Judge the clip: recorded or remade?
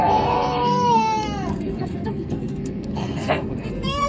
remade